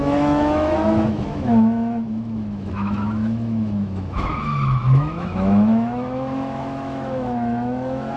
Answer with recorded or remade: remade